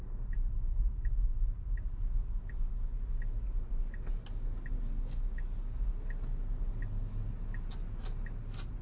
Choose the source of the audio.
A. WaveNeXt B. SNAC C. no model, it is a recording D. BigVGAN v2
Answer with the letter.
C